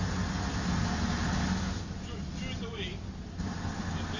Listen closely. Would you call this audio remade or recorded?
recorded